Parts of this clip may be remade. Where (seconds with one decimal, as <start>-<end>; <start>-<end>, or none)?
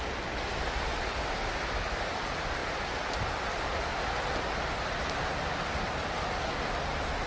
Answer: none